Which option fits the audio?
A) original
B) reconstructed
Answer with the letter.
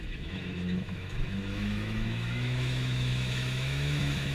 B